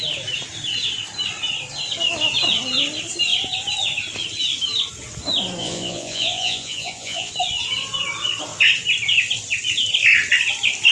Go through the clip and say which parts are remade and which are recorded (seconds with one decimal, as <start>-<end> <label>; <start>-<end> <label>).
0.0-5.6 recorded; 5.6-7.3 remade; 7.3-10.9 recorded